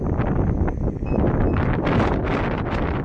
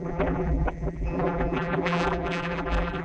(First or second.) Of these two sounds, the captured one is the first